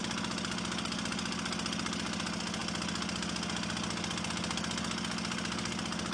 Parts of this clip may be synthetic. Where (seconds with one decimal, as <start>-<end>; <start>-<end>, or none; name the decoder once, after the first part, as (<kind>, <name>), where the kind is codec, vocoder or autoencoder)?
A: none